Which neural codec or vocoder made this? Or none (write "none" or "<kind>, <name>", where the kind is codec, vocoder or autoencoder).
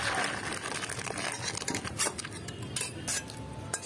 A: none